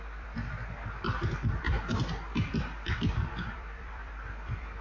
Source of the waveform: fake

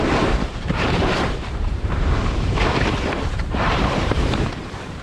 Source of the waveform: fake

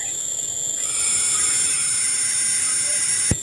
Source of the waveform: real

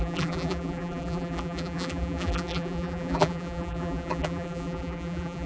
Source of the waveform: fake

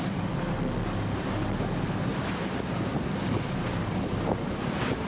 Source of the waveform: real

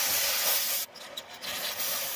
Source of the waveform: real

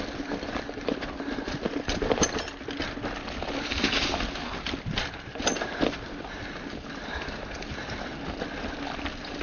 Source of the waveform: real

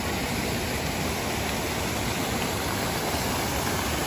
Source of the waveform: real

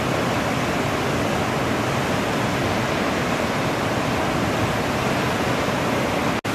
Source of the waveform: real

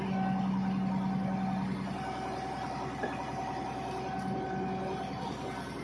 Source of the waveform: real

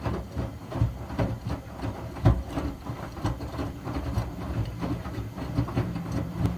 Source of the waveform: fake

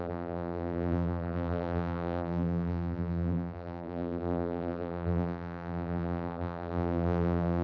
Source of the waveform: fake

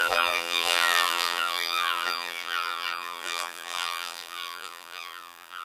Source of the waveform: fake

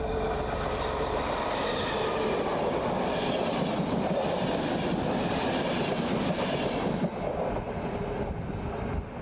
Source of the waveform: real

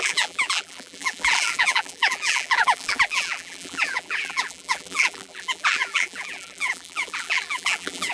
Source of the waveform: fake